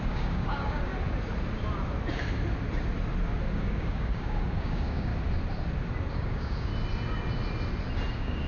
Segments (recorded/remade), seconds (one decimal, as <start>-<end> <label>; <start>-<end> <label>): 0.0-0.9 remade; 0.9-3.5 recorded; 3.5-5.1 remade; 5.1-6.1 recorded; 6.1-6.7 remade; 6.7-8.1 recorded; 8.1-8.5 remade